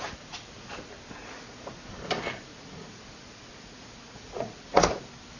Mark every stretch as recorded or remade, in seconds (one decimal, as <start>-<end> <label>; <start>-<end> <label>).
0.0-1.2 recorded; 1.2-1.7 remade; 1.7-2.5 recorded; 2.5-5.0 remade; 5.0-5.4 recorded